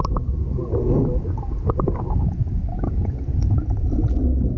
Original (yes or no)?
yes